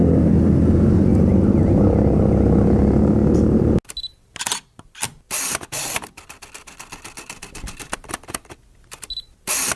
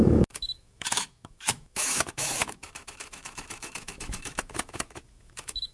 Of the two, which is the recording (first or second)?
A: first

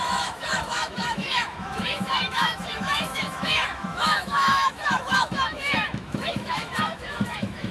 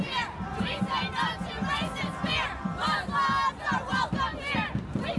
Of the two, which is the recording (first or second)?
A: second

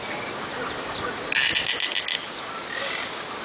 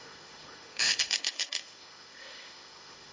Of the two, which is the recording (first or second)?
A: first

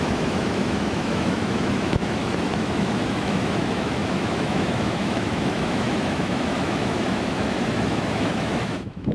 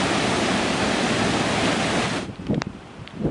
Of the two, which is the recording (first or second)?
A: second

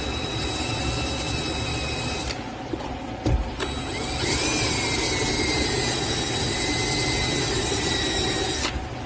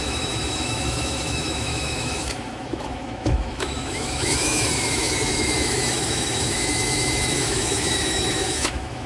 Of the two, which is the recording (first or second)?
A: first